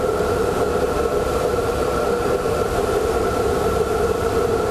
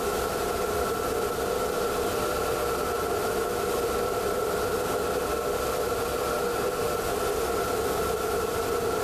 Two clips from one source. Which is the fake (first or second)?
first